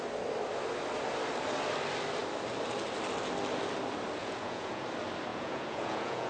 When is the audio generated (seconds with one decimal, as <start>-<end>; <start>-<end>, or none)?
4.2-4.8; 5.3-6.3